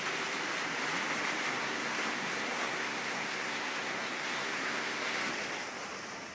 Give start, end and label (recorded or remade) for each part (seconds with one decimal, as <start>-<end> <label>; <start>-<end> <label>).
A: 0.0-1.6 recorded; 1.6-5.3 remade; 5.3-6.3 recorded